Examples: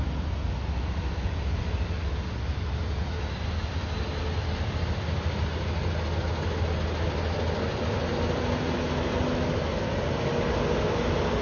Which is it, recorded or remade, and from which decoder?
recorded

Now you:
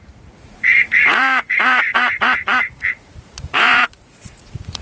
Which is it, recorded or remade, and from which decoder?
remade, vocoder, Vocos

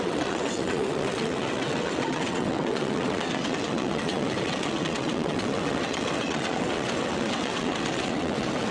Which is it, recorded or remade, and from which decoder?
remade, vocoder, WaveNeXt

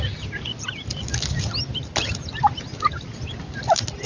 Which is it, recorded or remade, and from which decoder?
recorded